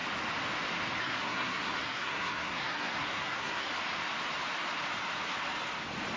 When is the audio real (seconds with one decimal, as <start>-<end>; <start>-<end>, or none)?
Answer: 0.0-1.0; 3.7-6.2